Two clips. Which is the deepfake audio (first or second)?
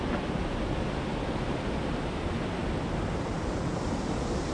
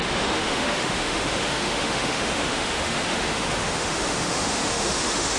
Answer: second